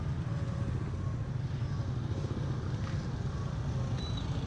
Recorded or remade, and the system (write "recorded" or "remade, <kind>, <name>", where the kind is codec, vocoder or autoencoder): recorded